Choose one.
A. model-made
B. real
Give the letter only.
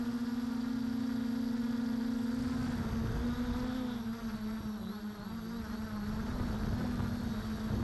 B